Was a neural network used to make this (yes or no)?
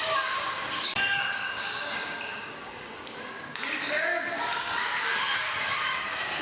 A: yes